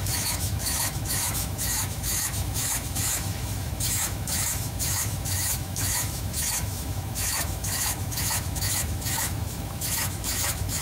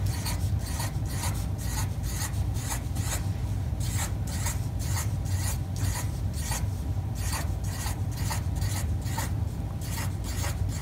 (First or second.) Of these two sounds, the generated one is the first